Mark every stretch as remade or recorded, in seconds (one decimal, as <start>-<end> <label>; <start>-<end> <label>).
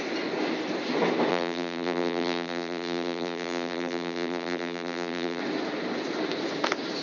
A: 0.0-1.3 recorded; 1.3-5.4 remade; 5.4-7.0 recorded